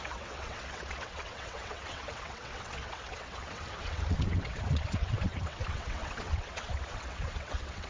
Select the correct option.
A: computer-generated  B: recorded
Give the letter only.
A